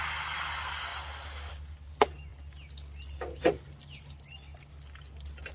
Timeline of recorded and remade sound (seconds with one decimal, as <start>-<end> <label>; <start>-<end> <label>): 0.0-5.5 recorded